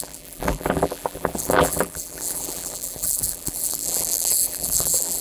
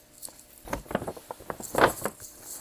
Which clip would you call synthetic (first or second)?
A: first